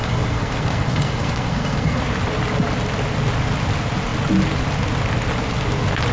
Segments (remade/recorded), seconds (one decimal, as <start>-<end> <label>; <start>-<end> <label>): 0.0-2.0 remade; 2.0-6.1 recorded